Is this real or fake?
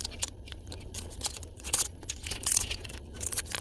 fake